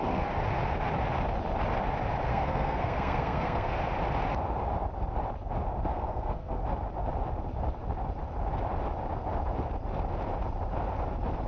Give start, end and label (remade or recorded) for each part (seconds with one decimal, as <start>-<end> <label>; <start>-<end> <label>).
0.0-2.3 recorded; 2.3-3.7 remade; 3.7-5.9 recorded; 5.9-6.6 remade; 6.6-11.5 recorded